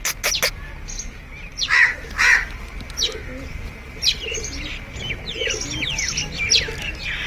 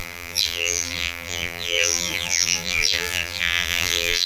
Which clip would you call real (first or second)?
first